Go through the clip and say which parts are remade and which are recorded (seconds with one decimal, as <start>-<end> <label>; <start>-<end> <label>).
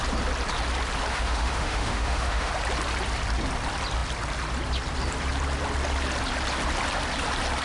0.0-1.1 recorded; 1.1-2.5 remade; 2.5-7.6 recorded